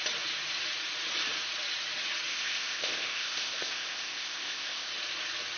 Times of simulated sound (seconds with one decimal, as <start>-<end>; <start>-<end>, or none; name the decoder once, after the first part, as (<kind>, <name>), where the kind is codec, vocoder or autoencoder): 2.3-4.9 (codec, ZipCodec)